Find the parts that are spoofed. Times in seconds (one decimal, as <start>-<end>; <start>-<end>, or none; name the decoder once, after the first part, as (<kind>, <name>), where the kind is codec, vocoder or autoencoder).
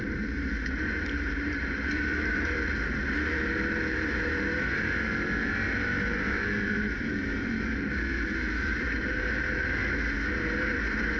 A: 0.0-9.8 (vocoder, BigVGAN v2)